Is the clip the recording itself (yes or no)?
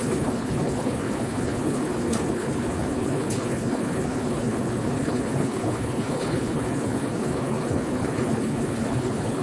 no